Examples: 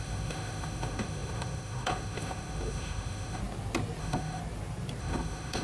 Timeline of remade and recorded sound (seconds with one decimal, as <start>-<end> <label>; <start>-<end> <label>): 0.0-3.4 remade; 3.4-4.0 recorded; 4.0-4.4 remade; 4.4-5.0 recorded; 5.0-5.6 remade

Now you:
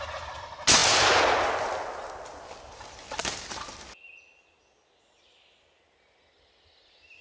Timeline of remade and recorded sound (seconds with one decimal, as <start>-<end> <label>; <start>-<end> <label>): 0.0-7.2 recorded

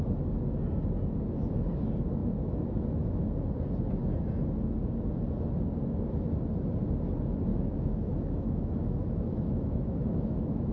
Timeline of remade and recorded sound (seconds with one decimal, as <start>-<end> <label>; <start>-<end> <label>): 0.0-7.5 recorded; 7.5-10.7 remade

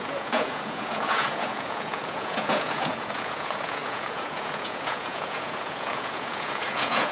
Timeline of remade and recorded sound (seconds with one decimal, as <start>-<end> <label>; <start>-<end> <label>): 0.0-7.1 remade